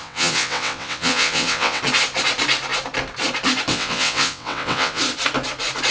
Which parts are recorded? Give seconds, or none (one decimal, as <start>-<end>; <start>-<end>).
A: 1.8-3.7; 5.0-5.9